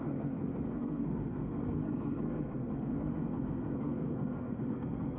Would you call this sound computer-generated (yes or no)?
yes